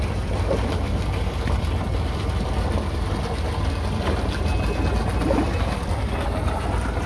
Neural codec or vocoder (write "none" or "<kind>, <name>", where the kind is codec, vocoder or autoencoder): none